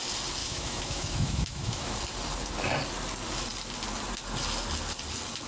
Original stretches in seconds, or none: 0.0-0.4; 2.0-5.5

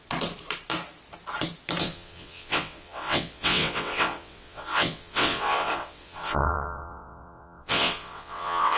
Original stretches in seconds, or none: 0.0-1.8

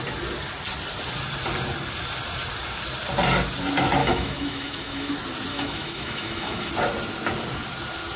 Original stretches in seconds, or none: 0.0-4.0; 5.1-5.5; 6.7-8.2